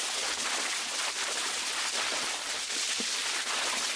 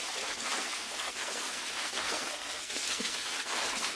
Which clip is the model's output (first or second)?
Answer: second